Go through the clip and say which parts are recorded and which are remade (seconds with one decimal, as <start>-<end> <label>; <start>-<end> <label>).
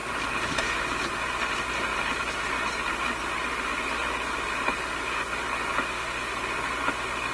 0.0-0.6 remade; 0.6-1.9 recorded; 1.9-2.4 remade; 2.4-4.0 recorded; 4.0-4.9 remade; 4.9-7.3 recorded